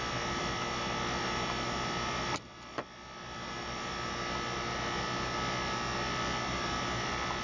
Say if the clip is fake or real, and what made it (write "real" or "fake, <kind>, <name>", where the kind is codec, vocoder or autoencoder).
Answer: real